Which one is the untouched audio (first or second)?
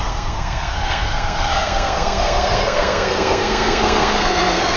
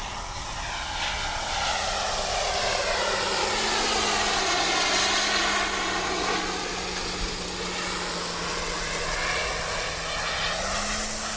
second